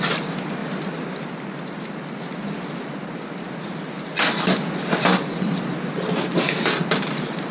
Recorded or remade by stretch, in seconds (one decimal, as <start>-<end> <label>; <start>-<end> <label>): 0.0-7.5 recorded